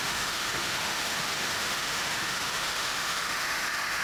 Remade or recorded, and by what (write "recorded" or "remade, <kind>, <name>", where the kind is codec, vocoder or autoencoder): remade, autoencoder, DAC-VAE